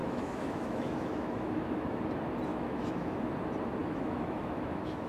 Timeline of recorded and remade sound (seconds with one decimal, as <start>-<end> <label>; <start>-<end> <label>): 0.0-2.0 remade; 2.0-2.5 recorded; 2.5-3.3 remade; 3.3-3.8 recorded; 3.8-5.1 remade